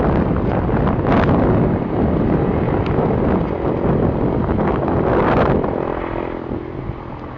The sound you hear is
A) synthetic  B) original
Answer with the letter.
B